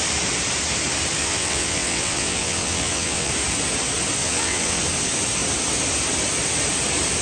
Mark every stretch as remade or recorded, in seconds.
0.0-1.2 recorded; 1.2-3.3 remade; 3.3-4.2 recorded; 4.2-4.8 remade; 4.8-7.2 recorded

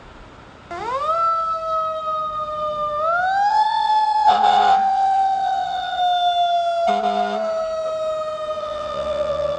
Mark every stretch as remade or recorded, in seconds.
0.0-3.5 recorded; 3.5-6.0 remade; 6.0-8.6 recorded; 8.6-9.6 remade

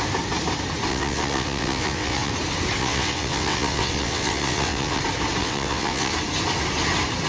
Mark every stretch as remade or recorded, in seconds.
0.0-0.9 recorded; 0.9-2.3 remade; 2.3-2.8 recorded; 2.8-5.0 remade; 5.0-5.4 recorded; 5.4-6.1 remade; 6.1-7.3 recorded

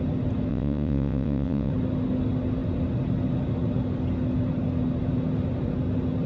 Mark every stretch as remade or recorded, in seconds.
0.0-0.5 recorded; 0.5-1.7 remade; 1.7-6.3 recorded

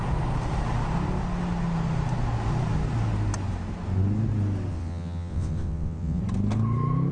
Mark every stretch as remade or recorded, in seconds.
0.0-4.7 recorded; 4.7-6.2 remade; 6.2-7.1 recorded

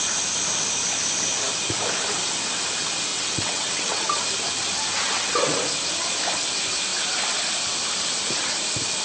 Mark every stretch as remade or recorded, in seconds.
0.0-3.1 recorded; 3.1-4.2 remade; 4.2-5.0 recorded; 5.0-5.6 remade; 5.6-9.0 recorded

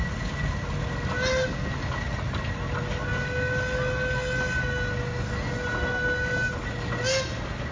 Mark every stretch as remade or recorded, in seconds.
0.0-7.7 recorded

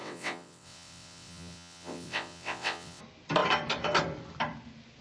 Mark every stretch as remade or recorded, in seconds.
0.0-3.0 remade; 3.0-5.0 recorded